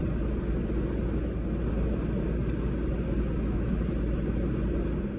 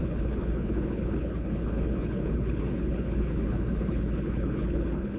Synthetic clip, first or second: second